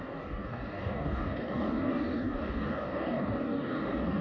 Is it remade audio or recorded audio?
remade